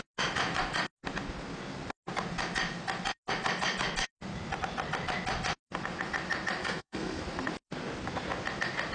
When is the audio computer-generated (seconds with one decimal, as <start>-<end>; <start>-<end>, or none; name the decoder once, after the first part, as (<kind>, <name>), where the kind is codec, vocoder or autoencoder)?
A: 6.6-7.2 (codec, SNAC)